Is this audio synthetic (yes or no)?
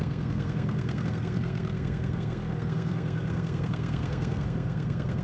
yes